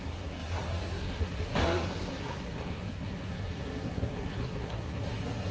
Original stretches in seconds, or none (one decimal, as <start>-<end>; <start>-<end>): none